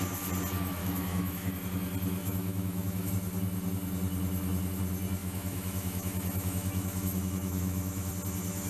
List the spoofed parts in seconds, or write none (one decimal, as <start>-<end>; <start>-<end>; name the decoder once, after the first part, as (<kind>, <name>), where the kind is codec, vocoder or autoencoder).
0.8-1.5 (autoencoder, DAC-VAE); 2.2-3.1; 5.2-8.1